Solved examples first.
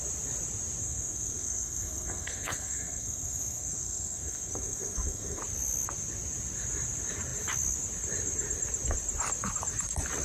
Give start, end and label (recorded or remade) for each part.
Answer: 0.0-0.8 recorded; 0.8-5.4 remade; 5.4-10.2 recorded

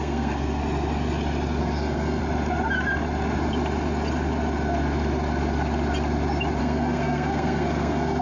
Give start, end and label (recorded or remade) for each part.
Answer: 0.0-0.6 remade; 0.6-1.6 recorded; 1.6-2.2 remade; 2.2-6.6 recorded; 6.6-8.2 remade

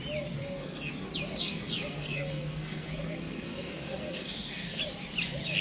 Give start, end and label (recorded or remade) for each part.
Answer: 0.0-0.4 recorded; 0.4-0.9 remade; 0.9-1.4 recorded; 1.4-4.8 remade; 4.8-5.6 recorded

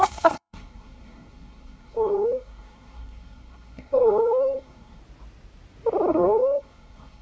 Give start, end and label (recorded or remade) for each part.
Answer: 0.0-5.0 remade; 5.0-6.1 recorded; 6.1-7.2 remade

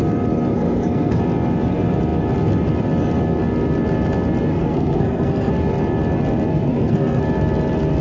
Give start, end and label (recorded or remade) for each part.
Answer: 0.0-0.5 recorded; 0.5-1.2 remade; 1.2-4.5 recorded; 4.5-5.5 remade; 5.5-6.5 recorded; 6.5-7.2 remade; 7.2-8.0 recorded

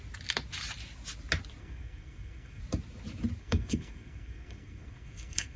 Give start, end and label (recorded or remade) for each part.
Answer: 0.0-1.6 recorded; 1.6-2.6 remade; 2.6-3.4 recorded; 3.4-5.6 remade